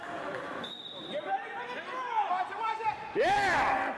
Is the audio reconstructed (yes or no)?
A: yes